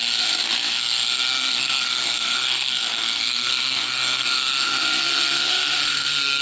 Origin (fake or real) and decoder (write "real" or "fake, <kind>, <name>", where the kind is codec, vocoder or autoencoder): fake, codec, SNAC